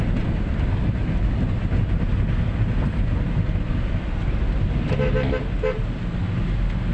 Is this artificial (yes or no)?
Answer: no